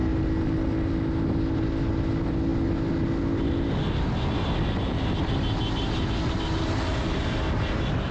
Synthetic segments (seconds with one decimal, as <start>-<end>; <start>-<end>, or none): none